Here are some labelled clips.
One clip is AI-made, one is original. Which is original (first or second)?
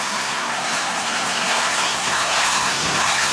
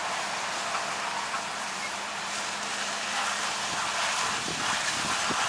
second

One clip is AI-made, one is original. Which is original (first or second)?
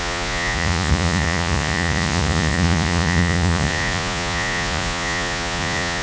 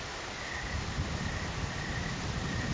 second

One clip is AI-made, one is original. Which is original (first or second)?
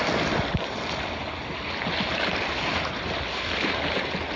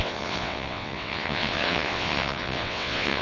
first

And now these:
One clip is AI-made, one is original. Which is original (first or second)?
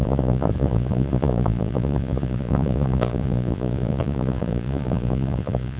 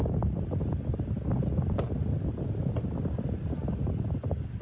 second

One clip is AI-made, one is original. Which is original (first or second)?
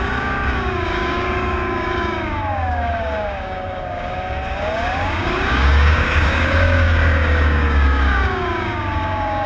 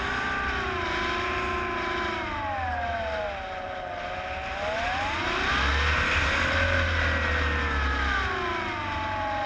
second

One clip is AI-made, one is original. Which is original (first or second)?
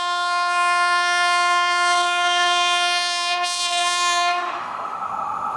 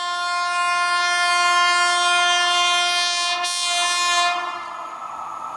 second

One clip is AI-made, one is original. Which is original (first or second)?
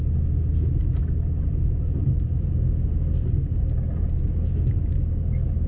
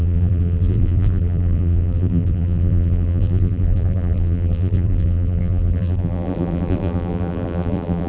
first